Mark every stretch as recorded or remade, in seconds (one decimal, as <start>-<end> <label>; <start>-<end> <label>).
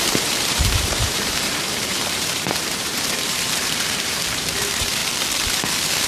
0.0-5.0 remade; 5.0-6.1 recorded